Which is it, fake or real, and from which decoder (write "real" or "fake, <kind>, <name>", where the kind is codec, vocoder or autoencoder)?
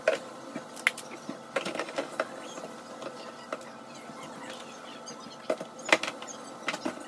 real